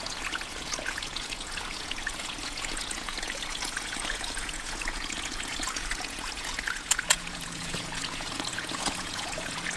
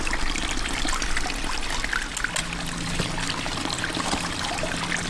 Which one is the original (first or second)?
second